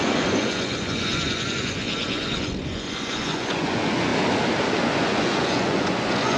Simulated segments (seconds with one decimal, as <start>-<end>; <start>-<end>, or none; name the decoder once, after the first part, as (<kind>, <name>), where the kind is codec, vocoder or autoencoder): 0.0-4.1 (vocoder, Vocos); 4.8-6.4